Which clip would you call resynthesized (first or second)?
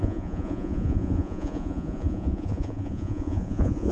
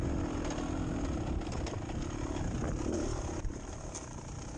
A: first